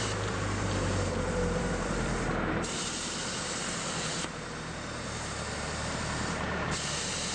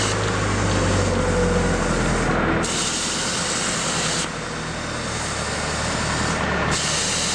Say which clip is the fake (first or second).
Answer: first